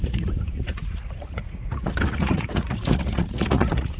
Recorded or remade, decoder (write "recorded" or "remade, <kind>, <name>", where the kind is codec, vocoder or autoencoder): remade, vocoder, Vocos